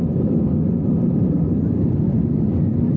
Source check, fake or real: real